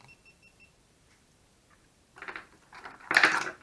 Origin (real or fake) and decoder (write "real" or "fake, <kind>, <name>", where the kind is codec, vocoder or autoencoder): fake, vocoder, BigVGAN v2